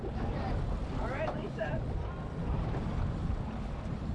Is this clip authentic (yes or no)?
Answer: yes